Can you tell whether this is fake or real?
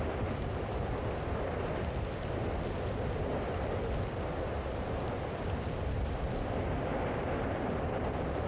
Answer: real